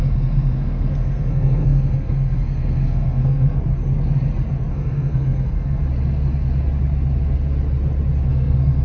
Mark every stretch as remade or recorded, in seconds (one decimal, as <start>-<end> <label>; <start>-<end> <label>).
0.0-3.6 remade; 3.6-4.7 recorded; 4.7-5.8 remade; 5.8-8.3 recorded; 8.3-8.8 remade